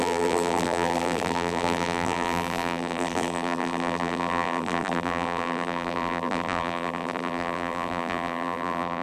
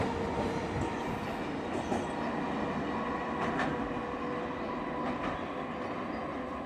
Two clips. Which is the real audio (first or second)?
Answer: second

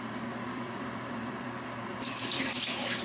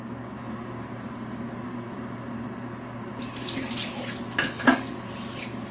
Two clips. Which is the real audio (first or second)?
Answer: second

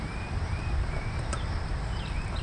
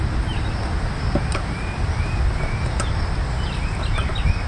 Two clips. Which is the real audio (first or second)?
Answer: second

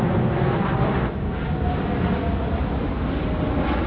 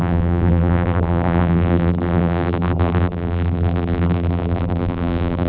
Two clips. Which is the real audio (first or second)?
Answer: first